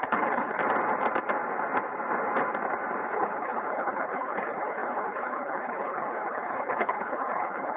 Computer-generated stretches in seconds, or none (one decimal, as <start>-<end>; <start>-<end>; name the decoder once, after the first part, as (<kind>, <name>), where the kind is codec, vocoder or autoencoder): 0.0-0.6 (codec, HILCodec); 3.1-7.8